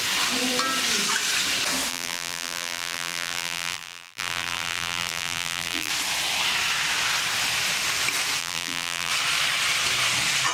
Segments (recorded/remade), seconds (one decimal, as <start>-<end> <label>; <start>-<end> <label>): 0.0-1.9 recorded; 1.9-5.9 remade; 5.9-8.4 recorded; 8.4-9.1 remade; 9.1-10.5 recorded